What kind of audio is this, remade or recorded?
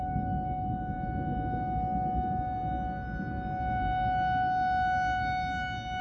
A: recorded